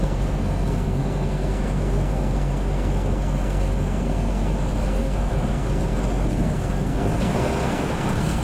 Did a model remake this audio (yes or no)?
yes